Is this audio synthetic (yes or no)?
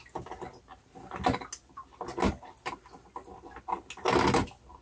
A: no